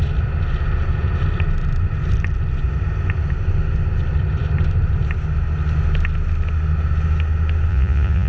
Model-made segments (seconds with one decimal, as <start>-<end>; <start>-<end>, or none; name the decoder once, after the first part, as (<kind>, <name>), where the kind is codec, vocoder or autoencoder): 7.7-8.3 (vocoder, Vocos)